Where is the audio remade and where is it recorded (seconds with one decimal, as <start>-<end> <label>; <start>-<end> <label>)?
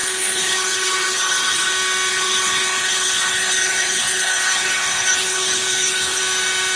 0.0-1.7 remade; 1.7-2.1 recorded; 2.1-6.2 remade; 6.2-6.8 recorded